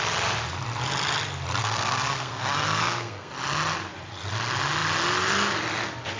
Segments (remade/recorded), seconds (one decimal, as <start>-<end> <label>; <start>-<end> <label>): 0.0-1.6 recorded; 1.6-3.3 remade; 3.3-6.2 recorded